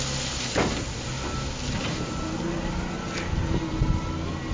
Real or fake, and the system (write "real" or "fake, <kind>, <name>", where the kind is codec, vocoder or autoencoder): real